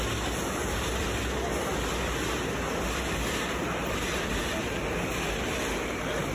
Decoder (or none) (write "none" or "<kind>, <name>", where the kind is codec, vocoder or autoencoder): none